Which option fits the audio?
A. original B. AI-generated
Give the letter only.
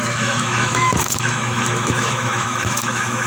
B